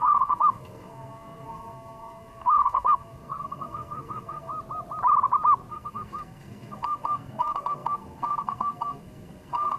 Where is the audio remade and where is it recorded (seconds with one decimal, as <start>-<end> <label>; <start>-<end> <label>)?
0.0-4.5 remade; 4.5-5.7 recorded; 5.7-9.8 remade